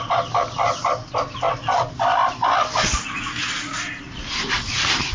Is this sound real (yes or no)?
yes